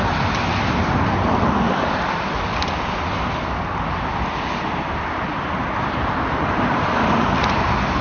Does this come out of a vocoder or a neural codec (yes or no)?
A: no